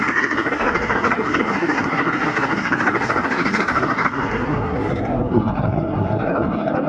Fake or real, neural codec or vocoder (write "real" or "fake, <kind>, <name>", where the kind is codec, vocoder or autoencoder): fake, codec, SNAC